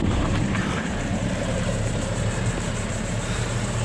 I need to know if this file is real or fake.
fake